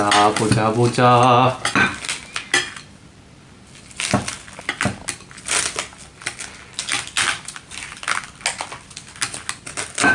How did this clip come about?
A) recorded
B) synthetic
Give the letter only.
A